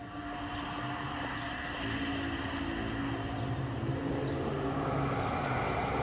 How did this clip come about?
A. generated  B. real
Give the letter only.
B